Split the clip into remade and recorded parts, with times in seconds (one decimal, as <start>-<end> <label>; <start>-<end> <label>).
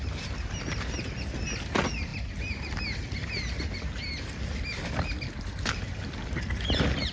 0.0-7.1 recorded